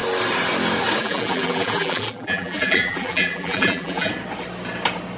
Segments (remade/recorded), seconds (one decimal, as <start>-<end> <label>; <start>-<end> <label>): 0.0-1.0 recorded; 1.0-4.1 remade; 4.1-5.2 recorded